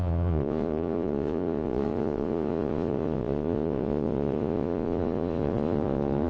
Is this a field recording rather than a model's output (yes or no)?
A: no